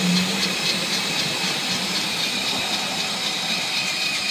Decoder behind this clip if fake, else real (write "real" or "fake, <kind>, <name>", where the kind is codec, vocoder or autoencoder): fake, vocoder, BigVGAN v2